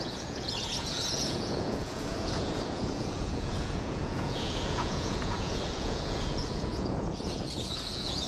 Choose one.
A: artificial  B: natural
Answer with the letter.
A